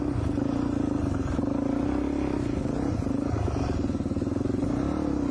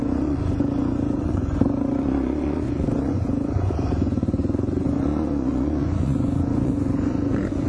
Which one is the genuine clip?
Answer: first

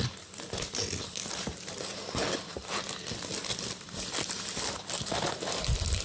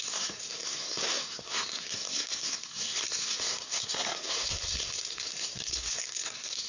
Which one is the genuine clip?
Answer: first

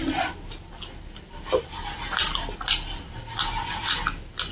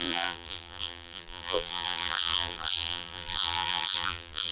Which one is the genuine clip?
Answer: first